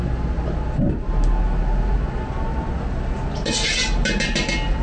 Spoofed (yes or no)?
no